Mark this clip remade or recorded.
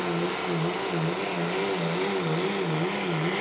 recorded